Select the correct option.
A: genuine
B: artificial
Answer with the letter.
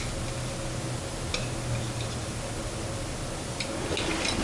A